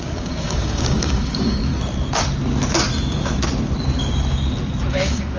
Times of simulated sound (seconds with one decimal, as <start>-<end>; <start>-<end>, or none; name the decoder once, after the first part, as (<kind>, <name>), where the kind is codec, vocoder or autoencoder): 0.0-1.7 (codec, DAC); 4.9-5.4

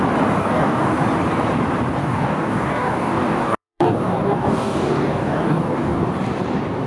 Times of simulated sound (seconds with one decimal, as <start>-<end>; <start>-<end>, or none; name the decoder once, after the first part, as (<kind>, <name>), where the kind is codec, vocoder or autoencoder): 0.4-0.9 (codec, DAC); 2.0-6.1